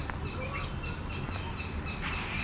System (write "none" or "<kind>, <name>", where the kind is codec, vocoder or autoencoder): none